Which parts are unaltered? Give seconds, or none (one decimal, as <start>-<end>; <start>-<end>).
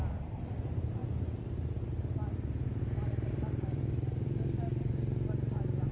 0.0-5.9